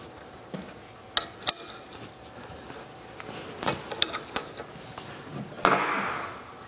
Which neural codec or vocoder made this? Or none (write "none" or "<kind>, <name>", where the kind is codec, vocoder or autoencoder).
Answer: none